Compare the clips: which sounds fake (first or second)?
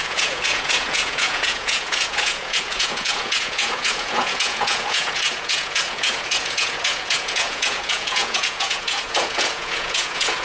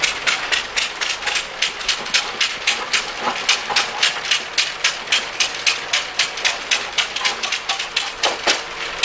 first